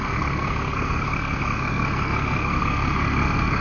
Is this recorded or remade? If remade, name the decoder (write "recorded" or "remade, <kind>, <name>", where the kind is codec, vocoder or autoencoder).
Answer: remade, codec, SNAC